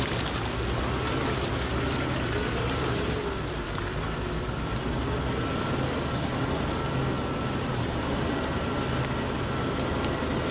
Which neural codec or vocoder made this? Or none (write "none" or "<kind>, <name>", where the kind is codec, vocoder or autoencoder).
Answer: none